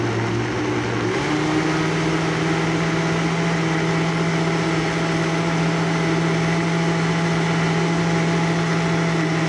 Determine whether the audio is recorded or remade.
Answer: recorded